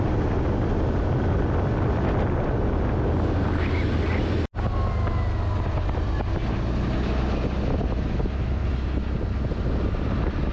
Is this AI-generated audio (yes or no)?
no